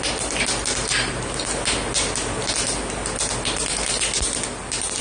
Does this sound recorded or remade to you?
recorded